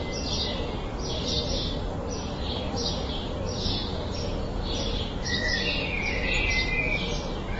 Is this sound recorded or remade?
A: recorded